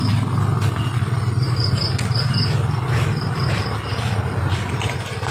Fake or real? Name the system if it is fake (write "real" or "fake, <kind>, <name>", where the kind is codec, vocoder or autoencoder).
real